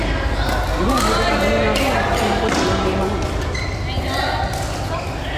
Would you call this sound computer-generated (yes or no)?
no